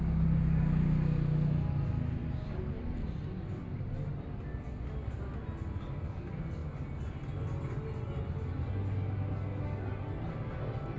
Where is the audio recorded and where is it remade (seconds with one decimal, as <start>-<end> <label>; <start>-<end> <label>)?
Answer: 0.0-11.0 recorded